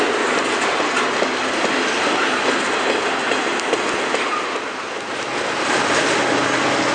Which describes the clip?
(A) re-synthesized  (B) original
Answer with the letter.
B